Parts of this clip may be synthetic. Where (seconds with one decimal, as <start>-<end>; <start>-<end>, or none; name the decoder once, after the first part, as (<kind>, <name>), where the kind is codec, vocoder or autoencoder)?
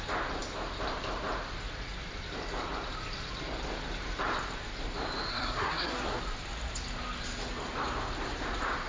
5.3-6.2 (codec, SNAC)